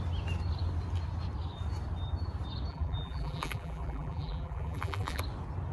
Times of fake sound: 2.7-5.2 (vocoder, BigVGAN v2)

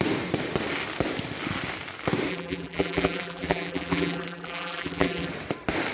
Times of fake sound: 2.3-5.3 (vocoder, BigVGAN v2)

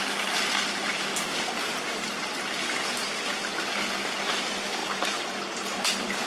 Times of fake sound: 4.8-5.3 (vocoder, BigVGAN v2)